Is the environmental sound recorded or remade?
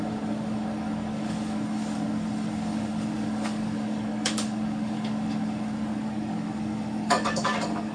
remade